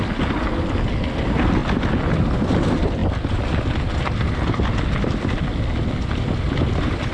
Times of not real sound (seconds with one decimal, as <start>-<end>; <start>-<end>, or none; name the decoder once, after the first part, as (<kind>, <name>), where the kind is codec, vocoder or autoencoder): none